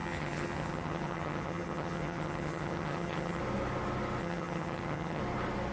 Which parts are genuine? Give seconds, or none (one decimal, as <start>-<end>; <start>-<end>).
3.4-4.2; 5.2-5.7